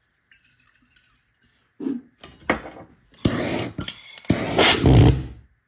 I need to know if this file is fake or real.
real